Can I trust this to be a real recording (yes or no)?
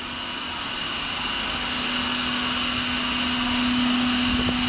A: yes